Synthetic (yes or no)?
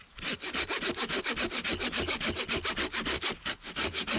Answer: no